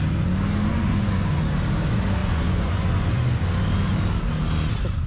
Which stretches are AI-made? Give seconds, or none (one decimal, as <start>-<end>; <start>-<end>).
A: 0.7-1.4; 2.2-3.4